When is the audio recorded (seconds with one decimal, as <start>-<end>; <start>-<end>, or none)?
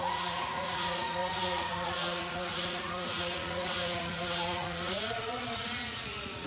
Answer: none